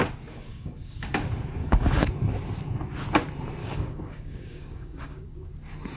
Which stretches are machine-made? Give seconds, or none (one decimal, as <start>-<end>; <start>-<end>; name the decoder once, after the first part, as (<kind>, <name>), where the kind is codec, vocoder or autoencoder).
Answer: 0.5-1.1 (codec, DAC); 1.6-2.1; 3.6-5.5